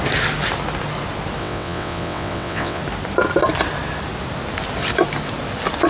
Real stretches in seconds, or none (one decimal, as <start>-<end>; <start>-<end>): 0.0-1.4; 2.8-5.9